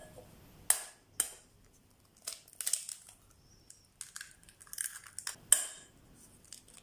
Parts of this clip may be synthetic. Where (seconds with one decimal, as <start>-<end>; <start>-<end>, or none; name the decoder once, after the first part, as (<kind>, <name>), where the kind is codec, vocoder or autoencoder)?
none

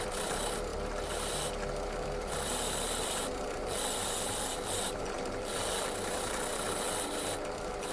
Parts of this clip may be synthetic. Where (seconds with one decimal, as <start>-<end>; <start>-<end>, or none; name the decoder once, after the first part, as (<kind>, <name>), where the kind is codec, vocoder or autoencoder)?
0.0-7.9 (vocoder, BigVGAN v2)